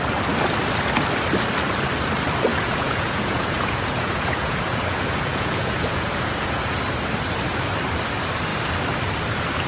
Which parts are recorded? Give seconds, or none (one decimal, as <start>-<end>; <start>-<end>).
0.0-2.5; 6.8-9.7